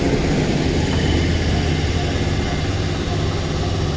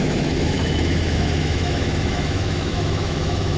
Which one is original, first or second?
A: first